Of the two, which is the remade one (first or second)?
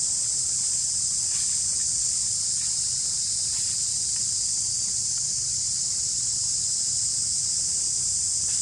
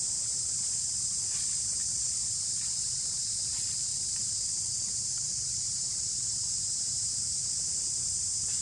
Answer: second